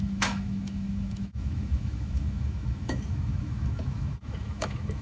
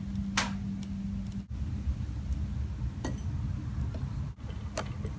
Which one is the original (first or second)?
second